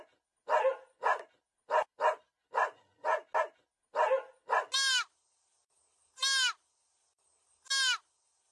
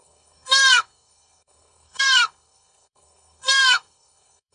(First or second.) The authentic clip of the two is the first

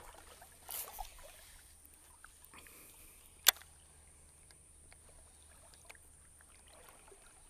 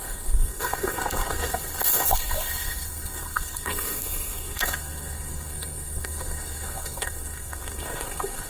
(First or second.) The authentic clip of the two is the first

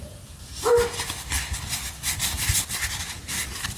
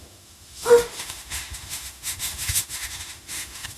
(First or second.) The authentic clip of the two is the first